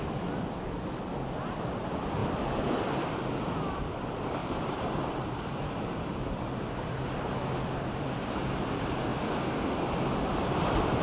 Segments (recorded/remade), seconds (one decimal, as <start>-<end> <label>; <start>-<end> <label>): 0.0-9.1 remade; 9.1-9.7 recorded; 9.7-11.0 remade